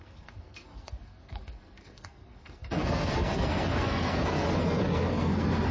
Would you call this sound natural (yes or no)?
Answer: no